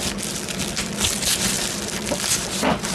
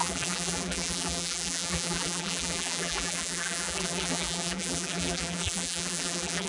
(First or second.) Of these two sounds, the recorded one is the first